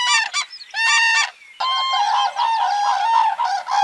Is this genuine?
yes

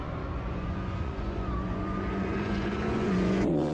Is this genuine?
no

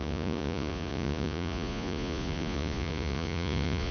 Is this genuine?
no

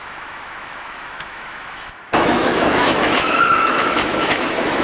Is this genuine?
no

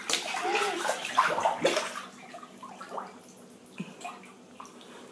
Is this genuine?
yes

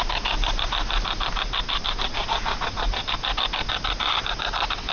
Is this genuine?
yes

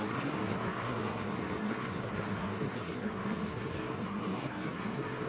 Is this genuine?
no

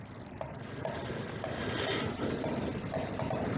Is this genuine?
yes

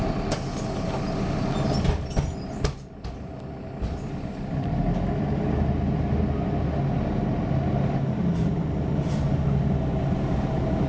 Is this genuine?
yes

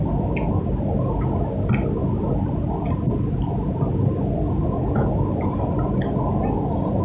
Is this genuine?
yes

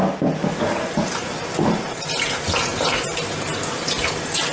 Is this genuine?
yes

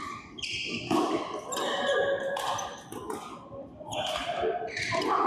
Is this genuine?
yes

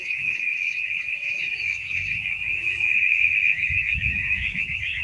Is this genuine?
no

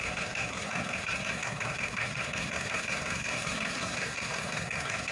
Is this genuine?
no